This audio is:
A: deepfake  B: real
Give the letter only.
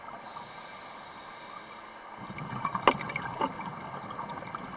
B